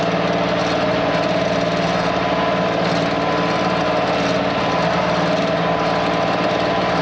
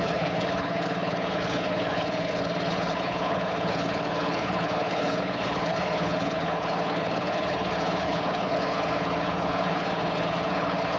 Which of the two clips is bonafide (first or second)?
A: first